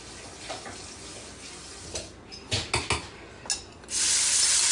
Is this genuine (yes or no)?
yes